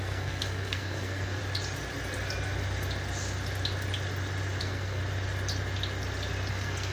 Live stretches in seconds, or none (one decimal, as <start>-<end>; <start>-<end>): 1.4-4.6; 5.0-6.5